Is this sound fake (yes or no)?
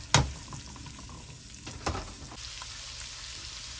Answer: no